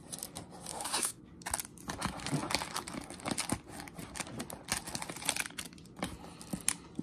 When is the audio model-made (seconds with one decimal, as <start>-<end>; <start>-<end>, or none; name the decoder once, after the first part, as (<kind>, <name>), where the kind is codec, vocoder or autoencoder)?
0.7-1.2 (autoencoder, DAC-VAE)